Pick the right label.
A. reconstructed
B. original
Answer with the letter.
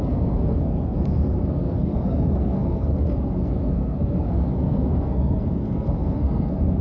A